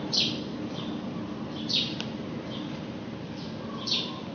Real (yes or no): yes